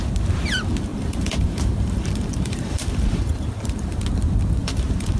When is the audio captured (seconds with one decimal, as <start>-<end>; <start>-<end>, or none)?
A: 0.0-0.9; 4.0-4.6

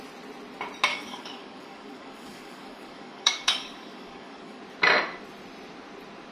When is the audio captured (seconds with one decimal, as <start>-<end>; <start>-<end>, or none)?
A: 0.0-0.9; 4.6-6.3

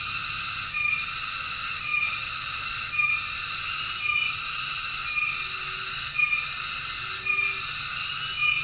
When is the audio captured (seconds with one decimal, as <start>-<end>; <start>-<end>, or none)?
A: 0.0-8.6

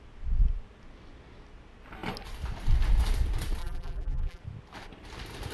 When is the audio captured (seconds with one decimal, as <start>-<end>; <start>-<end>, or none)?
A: 0.0-3.6; 4.4-5.5

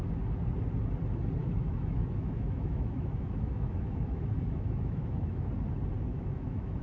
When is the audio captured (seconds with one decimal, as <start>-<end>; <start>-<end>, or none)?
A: 0.0-1.4; 5.5-6.1